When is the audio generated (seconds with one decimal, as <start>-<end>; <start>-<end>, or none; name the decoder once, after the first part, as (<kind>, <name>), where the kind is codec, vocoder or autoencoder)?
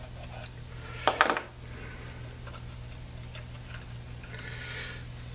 none